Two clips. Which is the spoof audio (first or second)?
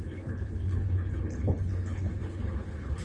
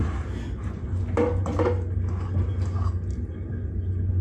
first